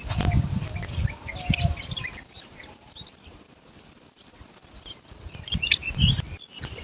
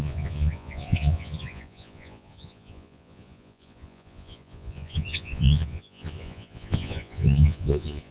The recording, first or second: first